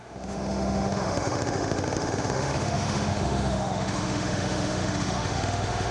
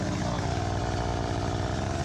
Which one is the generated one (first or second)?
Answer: first